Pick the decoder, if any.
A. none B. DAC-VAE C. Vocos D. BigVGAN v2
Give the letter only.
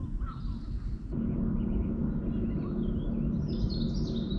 A